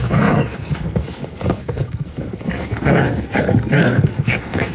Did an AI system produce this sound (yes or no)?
yes